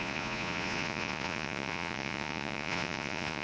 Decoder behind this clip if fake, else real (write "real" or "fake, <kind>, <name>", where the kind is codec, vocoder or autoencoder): fake, vocoder, Vocos